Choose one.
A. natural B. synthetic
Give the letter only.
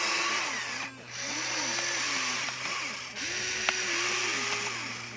A